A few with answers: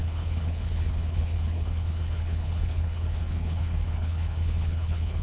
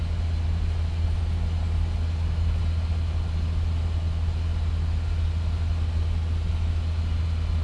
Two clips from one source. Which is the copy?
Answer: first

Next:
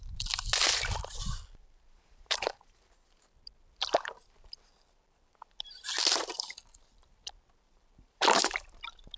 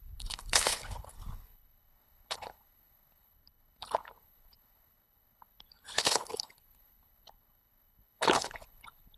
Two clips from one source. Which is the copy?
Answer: second